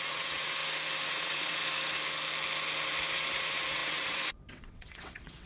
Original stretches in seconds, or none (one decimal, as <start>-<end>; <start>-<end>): 0.6-1.1; 1.6-3.3